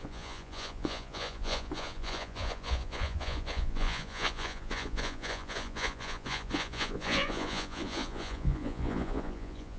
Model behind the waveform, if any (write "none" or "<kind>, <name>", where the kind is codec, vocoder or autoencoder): vocoder, Vocos